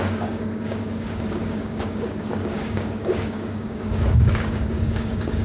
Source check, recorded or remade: remade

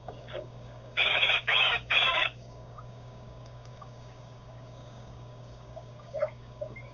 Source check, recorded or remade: remade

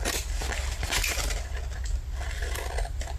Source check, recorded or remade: recorded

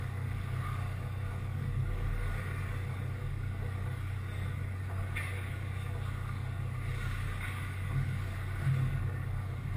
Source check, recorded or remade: remade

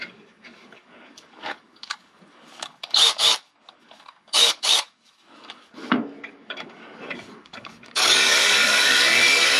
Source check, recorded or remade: remade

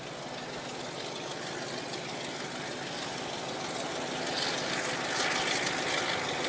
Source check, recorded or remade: recorded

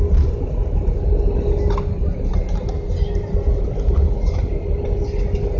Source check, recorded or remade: recorded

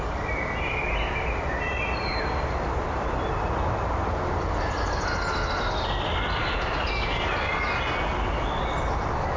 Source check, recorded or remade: recorded